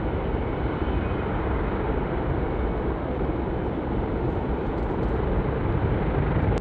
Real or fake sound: real